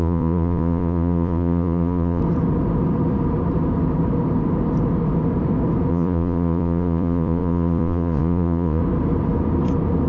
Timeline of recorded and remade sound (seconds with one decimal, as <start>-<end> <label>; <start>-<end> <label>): 0.0-2.2 remade; 2.2-5.9 recorded; 5.9-8.8 remade; 8.8-10.1 recorded